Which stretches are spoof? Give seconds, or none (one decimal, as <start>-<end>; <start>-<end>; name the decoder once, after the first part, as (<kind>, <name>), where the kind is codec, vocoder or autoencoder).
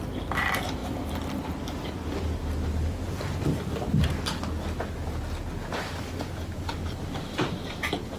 none